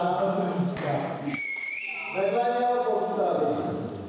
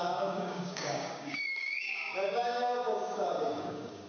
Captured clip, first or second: first